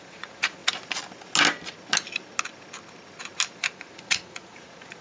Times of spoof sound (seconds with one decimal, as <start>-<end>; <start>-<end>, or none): 0.0-0.6; 3.6-5.0